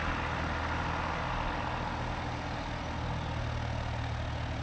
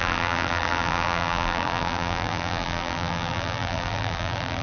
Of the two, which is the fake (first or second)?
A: second